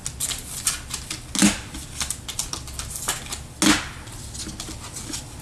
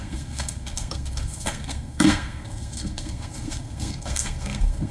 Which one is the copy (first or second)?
second